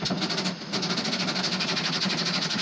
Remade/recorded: recorded